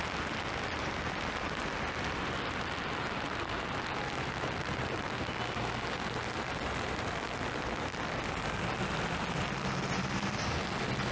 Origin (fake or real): real